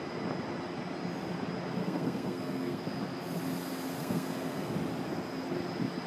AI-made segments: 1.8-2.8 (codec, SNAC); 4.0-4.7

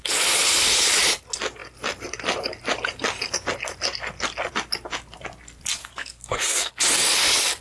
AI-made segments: 5.8-6.7 (codec, SNAC)

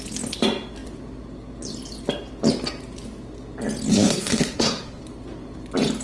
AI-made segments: 3.9-5.0 (codec, SNAC)

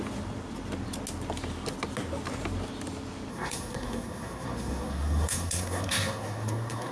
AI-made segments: 3.3-6.9 (codec, SNAC)

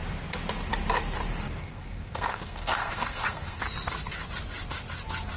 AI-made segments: 1.6-3.6 (codec, SNAC)